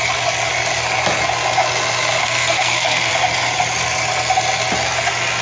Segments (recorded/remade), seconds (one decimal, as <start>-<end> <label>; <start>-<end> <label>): 0.0-2.2 recorded; 2.2-3.1 remade; 3.1-5.4 recorded